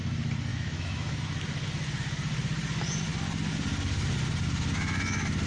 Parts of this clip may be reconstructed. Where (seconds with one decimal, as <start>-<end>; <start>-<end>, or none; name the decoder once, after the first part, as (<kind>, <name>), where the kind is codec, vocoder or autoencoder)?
0.5-1.2 (autoencoder, DAC-VAE)